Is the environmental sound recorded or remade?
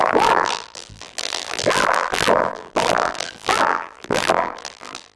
remade